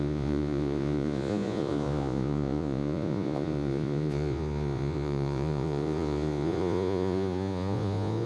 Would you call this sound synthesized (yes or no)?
yes